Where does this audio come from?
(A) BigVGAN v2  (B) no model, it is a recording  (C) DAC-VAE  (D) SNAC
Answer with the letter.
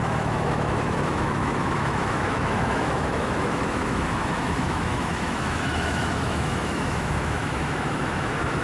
C